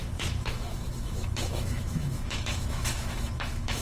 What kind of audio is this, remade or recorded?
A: remade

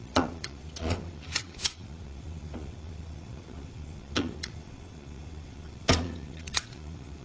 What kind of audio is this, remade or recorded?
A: remade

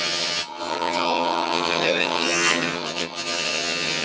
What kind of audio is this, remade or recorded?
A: remade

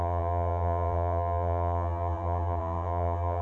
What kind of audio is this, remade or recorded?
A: remade